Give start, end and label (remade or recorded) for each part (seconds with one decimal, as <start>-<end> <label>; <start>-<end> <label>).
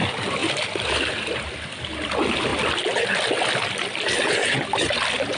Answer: 0.0-5.4 recorded